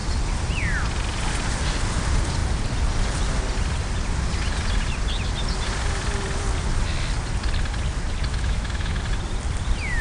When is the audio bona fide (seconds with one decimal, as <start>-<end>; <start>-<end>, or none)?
0.0-8.3; 9.0-10.0